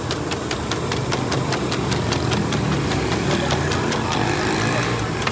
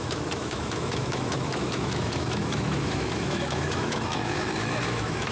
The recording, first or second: first